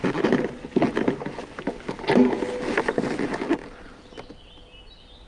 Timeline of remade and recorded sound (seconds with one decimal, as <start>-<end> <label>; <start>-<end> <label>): 0.0-5.3 recorded